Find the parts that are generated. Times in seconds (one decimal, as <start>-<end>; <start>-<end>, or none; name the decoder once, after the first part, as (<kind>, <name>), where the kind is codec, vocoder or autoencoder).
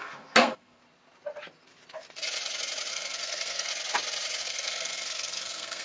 0.0-0.8 (codec, SNAC); 2.9-3.7; 4.4-5.8